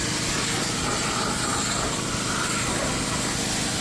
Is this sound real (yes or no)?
yes